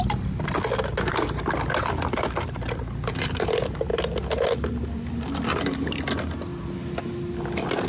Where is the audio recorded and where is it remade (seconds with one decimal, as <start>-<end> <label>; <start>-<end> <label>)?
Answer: 0.0-7.9 recorded